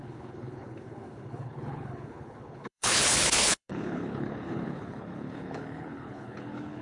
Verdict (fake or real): fake